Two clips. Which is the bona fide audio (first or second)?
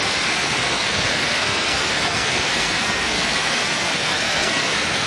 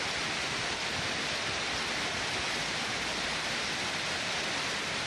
second